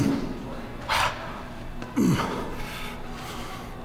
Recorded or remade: recorded